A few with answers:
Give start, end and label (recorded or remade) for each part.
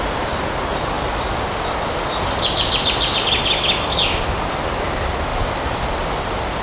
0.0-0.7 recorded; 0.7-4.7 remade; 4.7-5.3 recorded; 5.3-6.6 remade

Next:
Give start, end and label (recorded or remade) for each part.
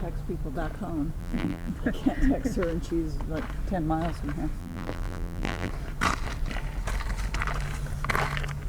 0.0-1.2 recorded; 1.2-1.7 remade; 1.7-4.6 recorded; 4.6-5.7 remade; 5.7-8.7 recorded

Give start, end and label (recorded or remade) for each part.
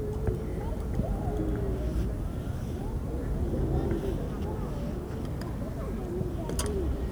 0.0-0.5 recorded; 0.5-1.4 remade; 1.4-1.9 recorded; 1.9-3.6 remade; 3.6-7.1 recorded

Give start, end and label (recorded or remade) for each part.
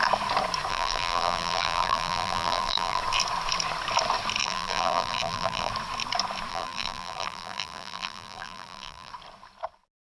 0.0-0.7 recorded; 0.7-3.0 remade; 3.0-4.4 recorded; 4.4-5.7 remade; 5.7-6.5 recorded; 6.5-9.1 remade; 9.1-10.2 recorded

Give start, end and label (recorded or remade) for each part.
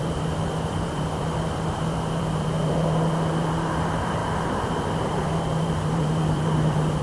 0.0-7.0 remade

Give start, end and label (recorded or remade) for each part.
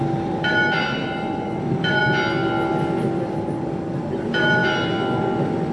0.0-2.0 remade; 2.0-3.6 recorded; 3.6-4.6 remade; 4.6-5.2 recorded; 5.2-5.7 remade